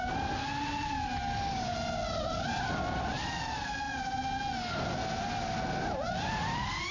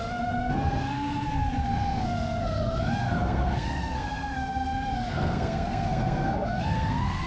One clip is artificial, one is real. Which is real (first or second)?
first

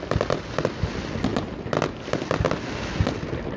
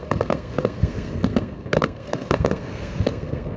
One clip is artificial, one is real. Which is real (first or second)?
first